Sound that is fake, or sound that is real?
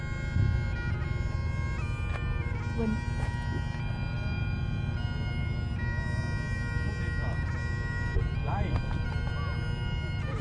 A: real